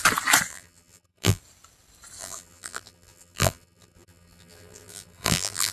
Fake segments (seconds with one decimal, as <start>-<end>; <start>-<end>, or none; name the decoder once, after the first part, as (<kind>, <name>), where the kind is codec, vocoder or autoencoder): 0.5-1.4 (vocoder, BigVGAN v2); 2.2-5.7